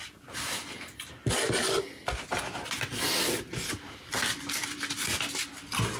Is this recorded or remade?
recorded